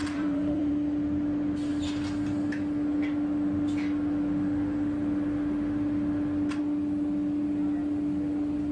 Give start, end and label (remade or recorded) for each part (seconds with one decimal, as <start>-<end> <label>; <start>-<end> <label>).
0.0-0.7 remade; 0.7-8.7 recorded